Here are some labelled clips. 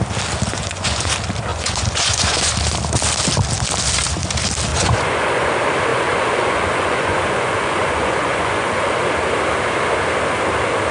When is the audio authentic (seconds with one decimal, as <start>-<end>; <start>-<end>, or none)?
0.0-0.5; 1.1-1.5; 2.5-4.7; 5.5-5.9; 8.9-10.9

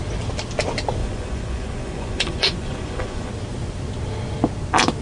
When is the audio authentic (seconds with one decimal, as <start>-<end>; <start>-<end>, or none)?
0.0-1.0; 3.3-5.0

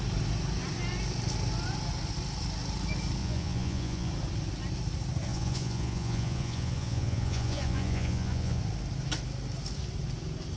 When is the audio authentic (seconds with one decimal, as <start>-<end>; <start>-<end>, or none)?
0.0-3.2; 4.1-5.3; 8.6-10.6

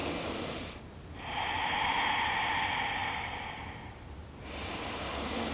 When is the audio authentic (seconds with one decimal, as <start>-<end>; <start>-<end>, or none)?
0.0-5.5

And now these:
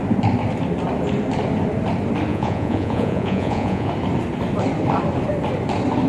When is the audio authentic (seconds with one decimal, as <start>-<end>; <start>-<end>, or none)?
0.0-2.3; 3.9-6.1

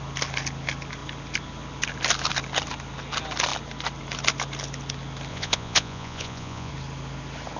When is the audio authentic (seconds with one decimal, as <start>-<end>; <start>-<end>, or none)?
0.0-5.3; 6.7-7.6

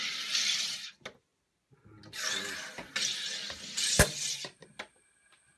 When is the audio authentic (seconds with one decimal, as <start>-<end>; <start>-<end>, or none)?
0.0-5.6